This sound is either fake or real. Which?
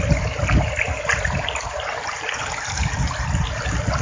real